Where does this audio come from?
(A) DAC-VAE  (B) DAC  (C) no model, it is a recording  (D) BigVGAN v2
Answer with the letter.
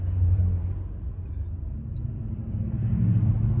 C